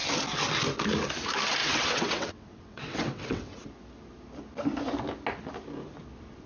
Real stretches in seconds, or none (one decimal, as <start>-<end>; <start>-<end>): 0.0-1.6; 3.7-6.5